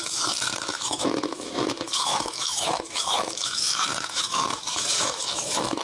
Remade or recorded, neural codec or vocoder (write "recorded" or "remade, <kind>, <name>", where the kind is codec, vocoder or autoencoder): remade, autoencoder, DAC-VAE